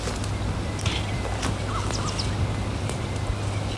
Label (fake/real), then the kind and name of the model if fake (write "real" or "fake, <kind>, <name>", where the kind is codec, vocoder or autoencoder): real